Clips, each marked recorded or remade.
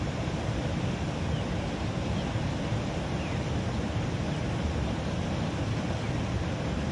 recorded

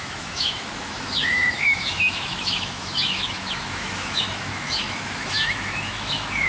remade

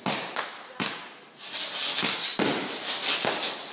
recorded